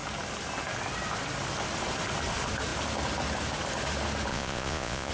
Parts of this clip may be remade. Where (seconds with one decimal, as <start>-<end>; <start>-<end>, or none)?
4.3-5.1